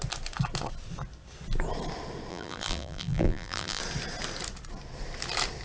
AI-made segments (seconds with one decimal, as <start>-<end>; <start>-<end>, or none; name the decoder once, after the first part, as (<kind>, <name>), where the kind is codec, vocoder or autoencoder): 2.3-3.8 (vocoder, BigVGAN v2)